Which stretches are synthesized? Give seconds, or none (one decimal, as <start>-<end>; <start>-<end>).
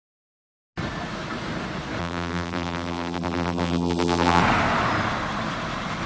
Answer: 2.0-4.4